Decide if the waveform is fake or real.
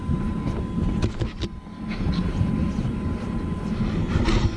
real